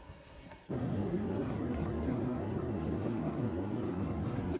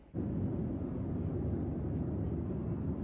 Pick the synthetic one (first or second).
first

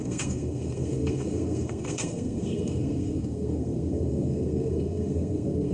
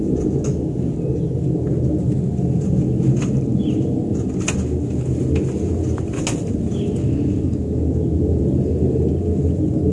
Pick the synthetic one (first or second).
first